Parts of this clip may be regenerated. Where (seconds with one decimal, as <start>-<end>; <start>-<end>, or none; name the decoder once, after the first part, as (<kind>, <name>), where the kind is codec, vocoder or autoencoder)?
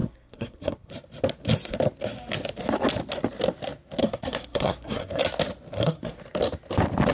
0.0-0.9 (codec, SNAC); 4.0-5.2; 5.7-6.2